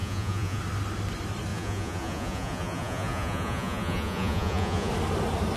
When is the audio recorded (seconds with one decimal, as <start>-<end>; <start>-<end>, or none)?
0.6-1.5; 4.9-5.6